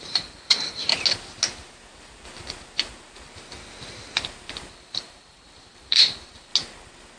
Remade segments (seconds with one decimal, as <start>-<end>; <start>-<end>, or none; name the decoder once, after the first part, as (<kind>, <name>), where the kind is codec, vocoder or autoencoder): 0.0-0.9 (vocoder, BigVGAN v2); 4.7-6.5